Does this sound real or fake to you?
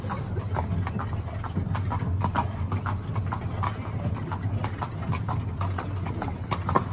real